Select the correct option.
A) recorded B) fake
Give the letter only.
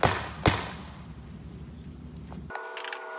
A